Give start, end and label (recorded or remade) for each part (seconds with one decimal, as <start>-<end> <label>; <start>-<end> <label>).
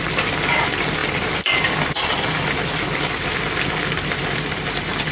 0.0-5.1 recorded